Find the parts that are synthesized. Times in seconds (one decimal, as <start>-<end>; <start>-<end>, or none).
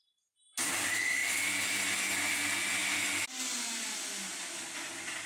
none